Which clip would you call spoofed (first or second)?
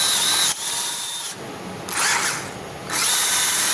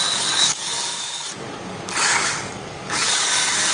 second